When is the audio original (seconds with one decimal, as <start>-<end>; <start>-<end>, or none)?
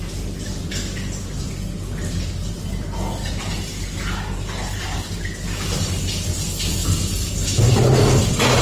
0.0-8.6